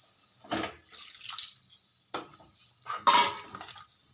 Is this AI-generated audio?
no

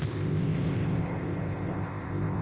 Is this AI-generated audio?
yes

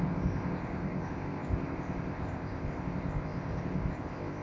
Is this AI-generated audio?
yes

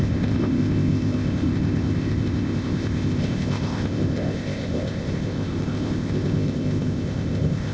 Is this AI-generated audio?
yes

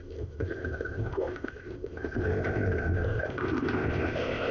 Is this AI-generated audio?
yes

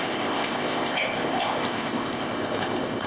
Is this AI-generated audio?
yes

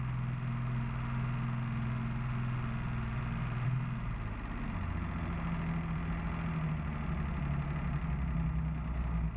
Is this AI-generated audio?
no